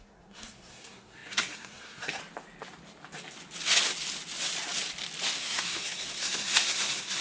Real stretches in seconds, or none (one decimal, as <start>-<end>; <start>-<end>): 2.2-5.4

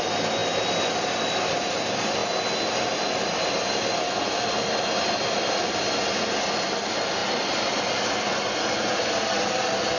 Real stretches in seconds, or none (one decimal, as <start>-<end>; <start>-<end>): 0.0-10.0